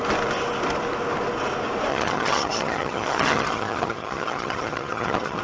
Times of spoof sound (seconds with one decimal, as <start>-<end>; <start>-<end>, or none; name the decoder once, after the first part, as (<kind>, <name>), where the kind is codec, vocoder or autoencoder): 1.9-5.4 (vocoder, HiFi-GAN)